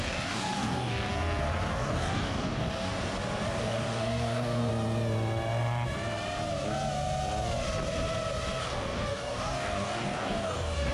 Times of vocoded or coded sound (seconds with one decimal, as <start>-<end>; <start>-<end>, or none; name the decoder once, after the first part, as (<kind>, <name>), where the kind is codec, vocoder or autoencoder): 0.0-1.1 (codec, DAC); 1.7-2.9; 3.5-4.7; 8.6-10.9